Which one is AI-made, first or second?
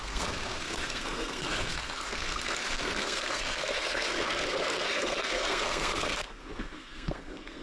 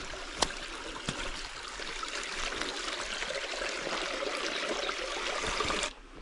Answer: first